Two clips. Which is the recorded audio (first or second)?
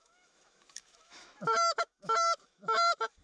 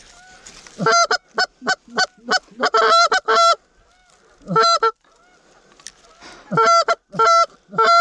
second